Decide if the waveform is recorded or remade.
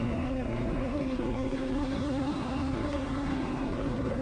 remade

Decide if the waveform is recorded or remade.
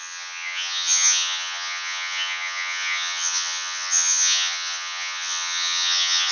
remade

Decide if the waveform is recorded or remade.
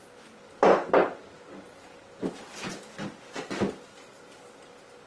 recorded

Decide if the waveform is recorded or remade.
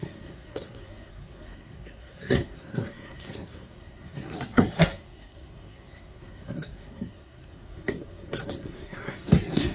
remade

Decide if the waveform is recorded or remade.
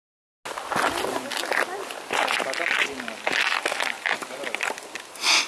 recorded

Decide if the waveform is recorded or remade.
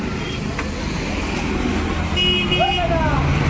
recorded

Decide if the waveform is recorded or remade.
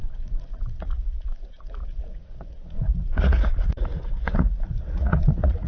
remade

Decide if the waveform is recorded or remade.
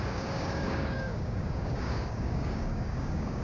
remade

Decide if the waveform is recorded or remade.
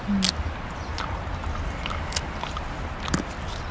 recorded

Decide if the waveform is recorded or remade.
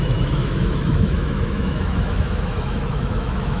remade